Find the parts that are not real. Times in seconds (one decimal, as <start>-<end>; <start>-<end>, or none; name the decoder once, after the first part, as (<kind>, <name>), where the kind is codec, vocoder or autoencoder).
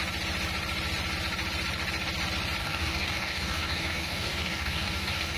2.6-5.4 (codec, DAC)